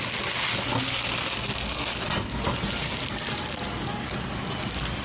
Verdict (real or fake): real